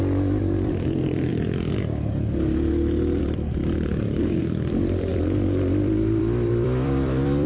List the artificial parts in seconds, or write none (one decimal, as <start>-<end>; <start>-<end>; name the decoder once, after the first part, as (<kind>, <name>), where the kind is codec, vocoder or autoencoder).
0.0-1.3 (vocoder, BigVGAN v2); 3.2-3.6; 4.4-7.5